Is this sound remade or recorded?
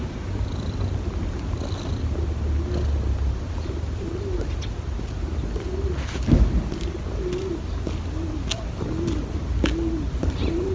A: recorded